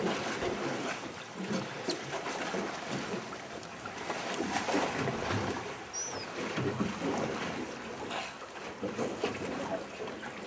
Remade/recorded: recorded